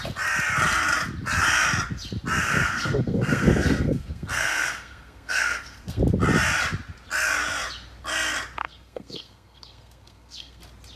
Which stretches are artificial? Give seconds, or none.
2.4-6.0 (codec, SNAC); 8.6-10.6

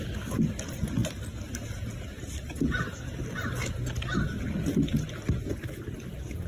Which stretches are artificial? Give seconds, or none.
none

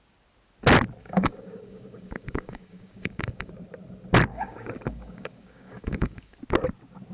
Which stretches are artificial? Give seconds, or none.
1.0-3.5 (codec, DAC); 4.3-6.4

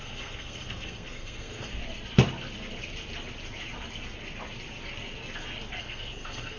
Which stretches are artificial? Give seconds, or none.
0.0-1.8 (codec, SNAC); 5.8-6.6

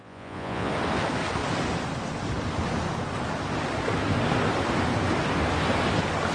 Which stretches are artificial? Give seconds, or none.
0.0-0.7 (vocoder, Vocos)

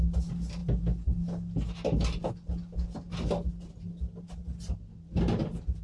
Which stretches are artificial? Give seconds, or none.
none